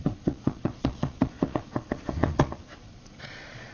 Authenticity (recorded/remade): remade